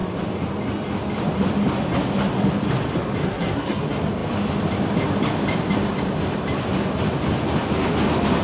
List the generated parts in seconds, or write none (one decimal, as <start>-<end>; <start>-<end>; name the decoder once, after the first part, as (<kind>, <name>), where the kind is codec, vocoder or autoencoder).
3.3-3.8 (codec, SNAC)